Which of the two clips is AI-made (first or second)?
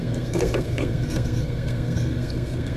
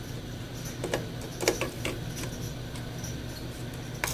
first